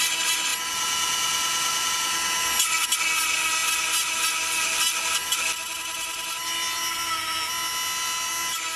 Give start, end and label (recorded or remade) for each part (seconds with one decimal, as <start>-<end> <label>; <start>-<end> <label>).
0.0-8.8 recorded